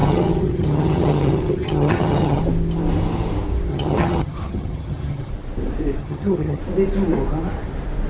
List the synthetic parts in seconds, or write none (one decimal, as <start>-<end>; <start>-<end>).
0.0-2.4; 3.7-5.3; 6.0-6.6